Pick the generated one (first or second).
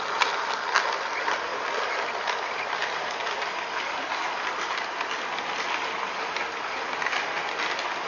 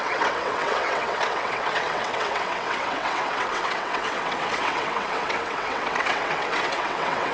second